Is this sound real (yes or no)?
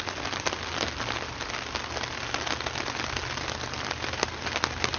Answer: yes